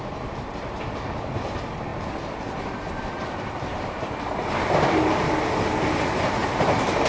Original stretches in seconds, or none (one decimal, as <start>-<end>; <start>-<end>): 0.0-7.1